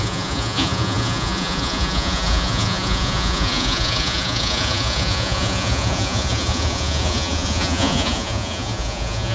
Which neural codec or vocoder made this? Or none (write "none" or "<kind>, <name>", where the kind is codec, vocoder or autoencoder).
vocoder, Vocos